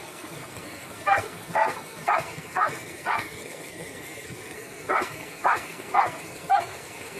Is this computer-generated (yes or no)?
yes